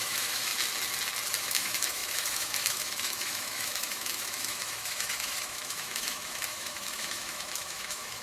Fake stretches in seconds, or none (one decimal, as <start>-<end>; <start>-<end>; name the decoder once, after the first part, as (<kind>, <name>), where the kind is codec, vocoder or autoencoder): 0.0-0.5 (autoencoder, DAC-VAE); 1.4-8.2